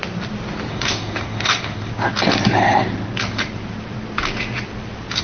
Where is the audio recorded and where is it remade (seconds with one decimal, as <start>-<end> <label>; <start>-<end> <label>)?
0.0-0.7 recorded; 0.7-1.9 remade; 1.9-5.2 recorded